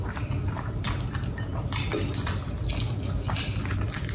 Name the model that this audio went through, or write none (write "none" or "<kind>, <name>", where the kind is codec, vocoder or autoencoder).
none